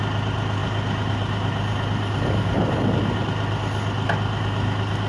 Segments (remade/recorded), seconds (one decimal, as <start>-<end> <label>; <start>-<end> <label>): 0.0-5.1 recorded